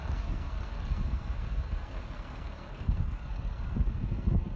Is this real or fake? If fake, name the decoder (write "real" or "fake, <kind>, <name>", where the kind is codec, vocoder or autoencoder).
fake, codec, SNAC